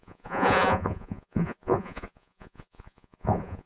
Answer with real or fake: fake